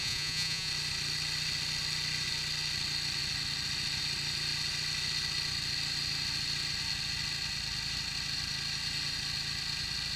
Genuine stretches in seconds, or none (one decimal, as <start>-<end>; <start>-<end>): 0.7-10.2